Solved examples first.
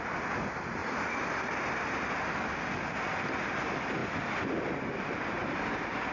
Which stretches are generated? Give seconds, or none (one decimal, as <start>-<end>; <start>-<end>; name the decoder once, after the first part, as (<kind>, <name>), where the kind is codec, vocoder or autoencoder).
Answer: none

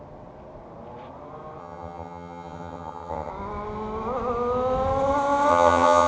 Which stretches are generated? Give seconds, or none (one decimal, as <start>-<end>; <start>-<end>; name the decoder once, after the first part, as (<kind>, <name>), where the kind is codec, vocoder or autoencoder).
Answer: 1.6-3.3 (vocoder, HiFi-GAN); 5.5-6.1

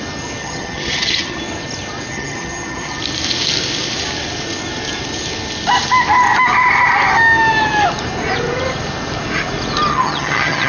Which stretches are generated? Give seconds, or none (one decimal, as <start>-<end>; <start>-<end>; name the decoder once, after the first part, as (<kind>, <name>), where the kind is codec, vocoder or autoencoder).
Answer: 0.4-1.4 (vocoder, HiFi-GAN); 2.1-3.0; 9.9-10.7

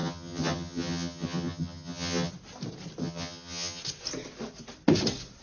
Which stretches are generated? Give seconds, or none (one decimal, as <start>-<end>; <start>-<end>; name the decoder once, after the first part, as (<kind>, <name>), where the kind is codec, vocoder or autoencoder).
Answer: 0.0-2.3 (vocoder, HiFi-GAN); 3.0-3.8

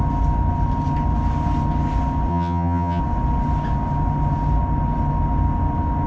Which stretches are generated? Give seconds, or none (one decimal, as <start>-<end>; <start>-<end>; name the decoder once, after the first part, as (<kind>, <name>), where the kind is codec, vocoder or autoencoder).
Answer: 2.3-3.0 (vocoder, HiFi-GAN)